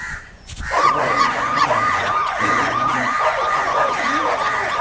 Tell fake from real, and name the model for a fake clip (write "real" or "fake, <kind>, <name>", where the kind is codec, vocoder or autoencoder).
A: fake, vocoder, Vocos